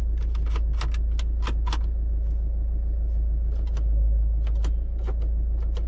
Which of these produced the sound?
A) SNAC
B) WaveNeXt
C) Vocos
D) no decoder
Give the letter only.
D